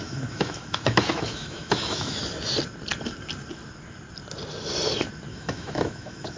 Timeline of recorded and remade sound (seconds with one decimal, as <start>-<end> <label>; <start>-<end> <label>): 0.0-2.2 remade; 2.2-5.3 recorded; 5.3-6.4 remade